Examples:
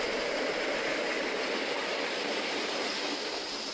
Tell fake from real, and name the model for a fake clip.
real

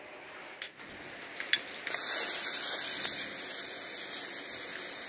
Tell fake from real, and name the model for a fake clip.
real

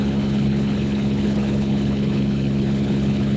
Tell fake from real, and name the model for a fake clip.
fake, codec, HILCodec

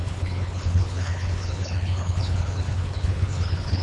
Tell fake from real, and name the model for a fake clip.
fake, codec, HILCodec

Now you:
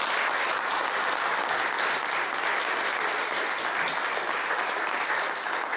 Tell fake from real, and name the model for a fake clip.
real